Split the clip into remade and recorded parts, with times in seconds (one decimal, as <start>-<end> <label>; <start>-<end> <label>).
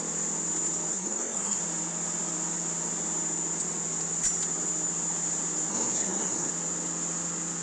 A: 0.0-0.9 recorded; 0.9-1.6 remade; 1.6-5.7 recorded; 5.7-6.5 remade; 6.5-7.6 recorded